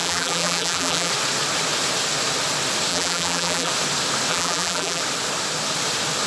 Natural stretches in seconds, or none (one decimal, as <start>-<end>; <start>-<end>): 1.1-2.9; 3.7-4.3; 5.0-6.3